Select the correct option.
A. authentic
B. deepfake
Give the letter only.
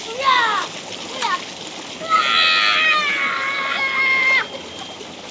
A